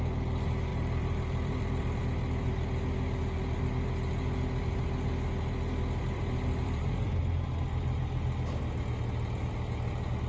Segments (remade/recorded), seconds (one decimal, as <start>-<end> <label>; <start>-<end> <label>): 0.0-0.7 recorded; 0.7-2.0 remade; 2.0-6.0 recorded; 6.0-7.2 remade; 7.2-10.3 recorded